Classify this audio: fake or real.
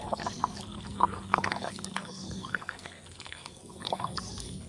fake